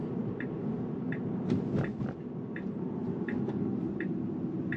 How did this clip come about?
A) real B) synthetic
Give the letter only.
A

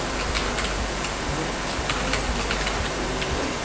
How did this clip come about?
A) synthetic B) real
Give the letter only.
B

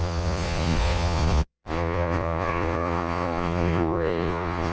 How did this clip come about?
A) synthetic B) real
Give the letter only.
A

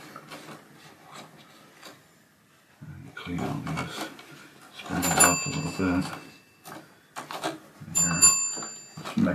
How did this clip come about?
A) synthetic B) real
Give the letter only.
B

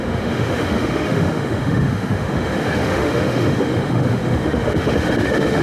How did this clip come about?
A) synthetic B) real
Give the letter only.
A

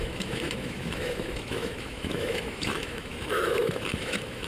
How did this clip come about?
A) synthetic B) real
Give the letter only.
A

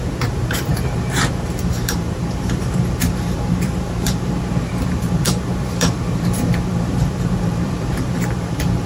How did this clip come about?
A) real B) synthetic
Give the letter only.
B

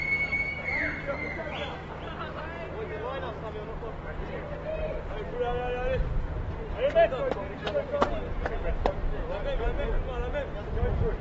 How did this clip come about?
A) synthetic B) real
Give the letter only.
B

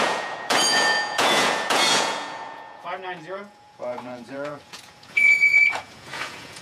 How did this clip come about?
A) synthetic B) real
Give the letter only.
A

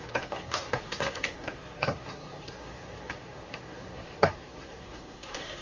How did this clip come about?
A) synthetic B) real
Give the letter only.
A